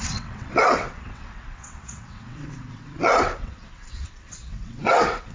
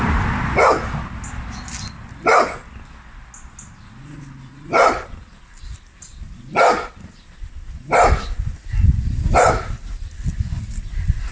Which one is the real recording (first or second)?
second